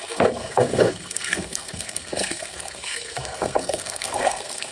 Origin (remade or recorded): remade